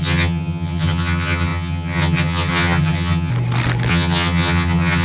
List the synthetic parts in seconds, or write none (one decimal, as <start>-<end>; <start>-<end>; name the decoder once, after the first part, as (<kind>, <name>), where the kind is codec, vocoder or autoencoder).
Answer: 0.0-3.3 (vocoder, HiFi-GAN); 3.9-5.0